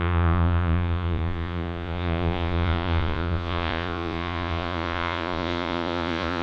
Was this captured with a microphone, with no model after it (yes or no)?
no